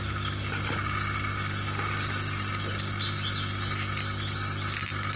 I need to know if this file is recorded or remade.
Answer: recorded